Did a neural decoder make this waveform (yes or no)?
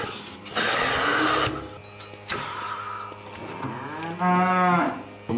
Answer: no